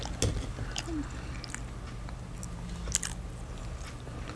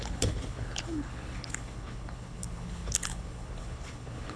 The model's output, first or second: second